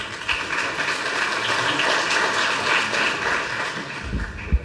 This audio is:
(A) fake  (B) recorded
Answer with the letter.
B